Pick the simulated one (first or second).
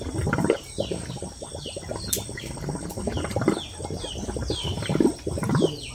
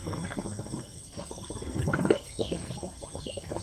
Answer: second